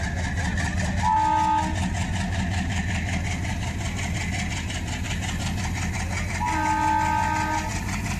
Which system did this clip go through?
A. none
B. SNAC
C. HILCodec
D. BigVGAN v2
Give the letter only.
A